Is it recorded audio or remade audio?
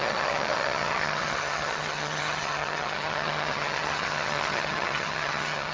remade